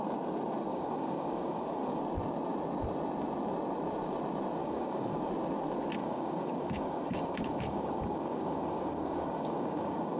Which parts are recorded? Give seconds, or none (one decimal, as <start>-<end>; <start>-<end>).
0.0-0.7; 2.0-4.6; 5.3-6.0

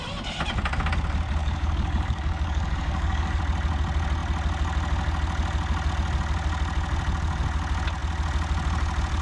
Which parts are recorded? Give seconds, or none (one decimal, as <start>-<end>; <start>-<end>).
0.0-1.4; 3.4-9.2

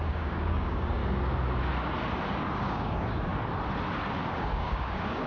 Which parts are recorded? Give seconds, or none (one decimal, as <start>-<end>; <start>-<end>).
1.0-2.6; 3.3-4.3

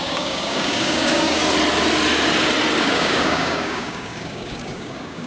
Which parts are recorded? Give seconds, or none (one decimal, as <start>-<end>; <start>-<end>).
1.4-2.8